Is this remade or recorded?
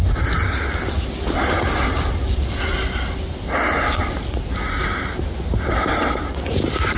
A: recorded